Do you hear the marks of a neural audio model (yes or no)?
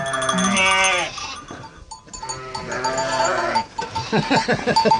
no